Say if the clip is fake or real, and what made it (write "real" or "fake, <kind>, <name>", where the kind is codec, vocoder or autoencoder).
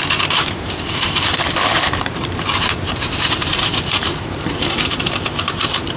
fake, vocoder, BigVGAN v2